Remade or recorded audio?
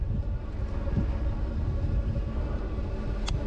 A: recorded